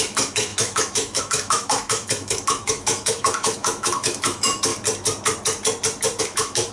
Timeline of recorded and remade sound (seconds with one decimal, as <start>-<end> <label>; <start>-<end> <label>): 0.0-4.7 remade; 4.7-6.2 recorded; 6.2-6.7 remade